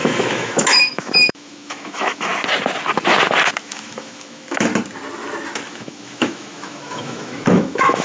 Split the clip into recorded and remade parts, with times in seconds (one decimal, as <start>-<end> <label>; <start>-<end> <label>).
0.0-2.3 remade; 2.3-3.6 recorded; 3.6-4.7 remade; 4.7-5.7 recorded; 5.7-8.0 remade